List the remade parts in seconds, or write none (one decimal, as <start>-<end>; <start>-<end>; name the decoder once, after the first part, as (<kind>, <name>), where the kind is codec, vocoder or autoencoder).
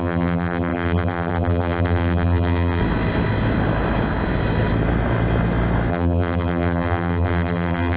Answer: 0.0-2.8 (vocoder, BigVGAN v2); 5.9-8.0